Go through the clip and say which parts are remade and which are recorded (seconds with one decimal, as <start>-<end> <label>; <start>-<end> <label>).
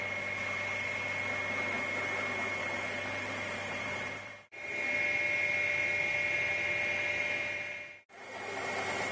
0.0-2.6 recorded; 2.6-4.5 remade; 4.5-9.1 recorded